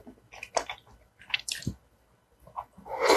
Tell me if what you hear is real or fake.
real